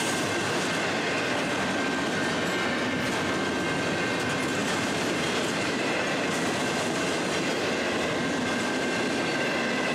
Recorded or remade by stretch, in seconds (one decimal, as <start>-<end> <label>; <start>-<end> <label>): 0.0-4.6 recorded; 4.6-6.0 remade; 6.0-9.9 recorded